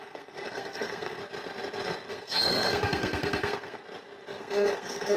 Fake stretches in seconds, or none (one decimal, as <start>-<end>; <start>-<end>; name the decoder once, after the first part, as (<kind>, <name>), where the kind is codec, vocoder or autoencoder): 0.0-1.2 (codec, SNAC); 2.1-3.8; 4.4-5.2